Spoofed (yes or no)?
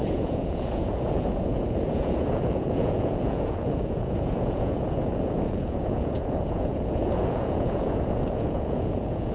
yes